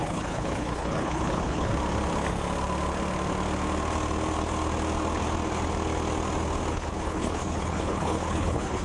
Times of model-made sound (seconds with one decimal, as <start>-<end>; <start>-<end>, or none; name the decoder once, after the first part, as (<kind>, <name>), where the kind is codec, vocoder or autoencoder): 0.0-1.7 (codec, HILCodec); 6.7-8.8